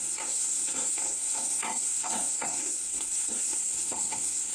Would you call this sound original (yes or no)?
no